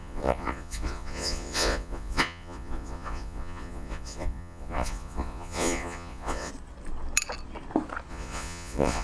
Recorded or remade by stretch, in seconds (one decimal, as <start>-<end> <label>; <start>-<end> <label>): 0.0-6.5 remade; 6.5-8.1 recorded; 8.1-9.0 remade